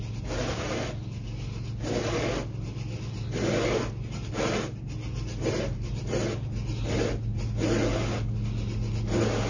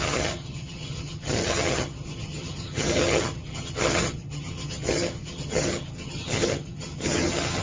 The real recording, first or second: first